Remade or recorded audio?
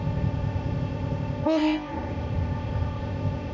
remade